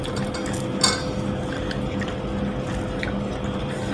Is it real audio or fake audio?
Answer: real